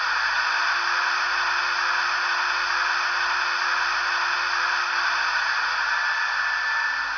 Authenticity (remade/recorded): recorded